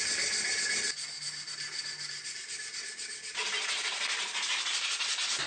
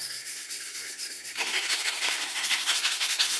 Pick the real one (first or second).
first